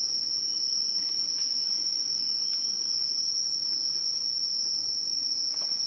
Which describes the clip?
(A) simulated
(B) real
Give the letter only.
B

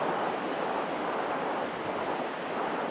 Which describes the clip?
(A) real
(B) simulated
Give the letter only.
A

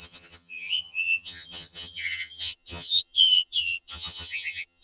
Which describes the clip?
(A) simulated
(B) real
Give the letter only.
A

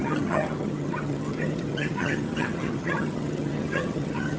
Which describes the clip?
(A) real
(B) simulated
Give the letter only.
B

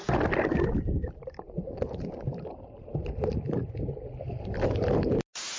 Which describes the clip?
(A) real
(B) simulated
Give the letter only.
A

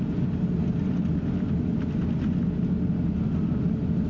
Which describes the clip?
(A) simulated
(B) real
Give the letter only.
B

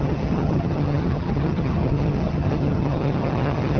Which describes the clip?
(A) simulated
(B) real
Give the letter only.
A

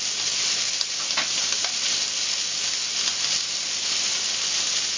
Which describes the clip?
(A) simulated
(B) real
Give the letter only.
B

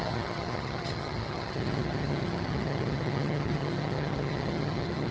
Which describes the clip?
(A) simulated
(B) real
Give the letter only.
A